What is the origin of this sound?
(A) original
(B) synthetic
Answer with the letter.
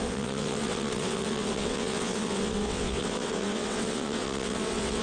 B